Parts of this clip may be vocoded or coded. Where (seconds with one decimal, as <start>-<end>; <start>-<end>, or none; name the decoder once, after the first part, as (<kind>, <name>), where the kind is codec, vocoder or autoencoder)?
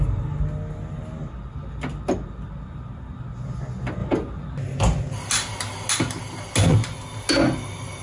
none